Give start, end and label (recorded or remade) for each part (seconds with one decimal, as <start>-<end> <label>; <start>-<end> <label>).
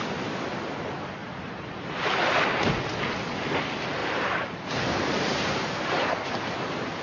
0.0-1.2 recorded; 1.2-2.1 remade; 2.1-4.0 recorded; 4.0-6.5 remade; 6.5-7.0 recorded